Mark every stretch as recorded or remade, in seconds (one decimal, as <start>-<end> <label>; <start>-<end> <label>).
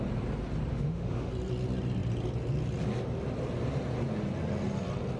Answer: 0.0-0.7 recorded; 0.7-1.3 remade; 1.3-5.2 recorded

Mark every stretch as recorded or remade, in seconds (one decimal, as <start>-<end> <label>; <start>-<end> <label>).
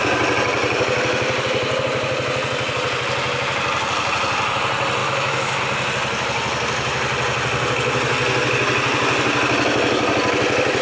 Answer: 0.0-5.0 recorded; 5.0-5.6 remade; 5.6-10.8 recorded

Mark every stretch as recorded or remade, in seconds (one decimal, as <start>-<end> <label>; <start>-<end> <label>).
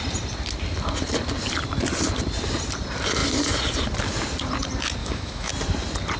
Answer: 0.0-5.0 recorded; 5.0-5.5 remade; 5.5-6.2 recorded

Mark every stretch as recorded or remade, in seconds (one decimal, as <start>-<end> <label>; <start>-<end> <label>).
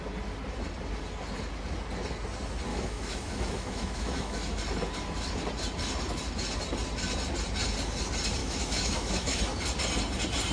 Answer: 0.0-2.7 recorded; 2.7-4.6 remade; 4.6-8.4 recorded; 8.4-9.4 remade; 9.4-10.5 recorded